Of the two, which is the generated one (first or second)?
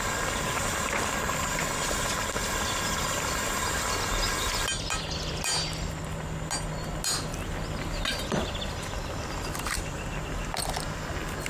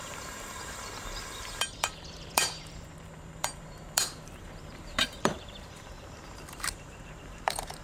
second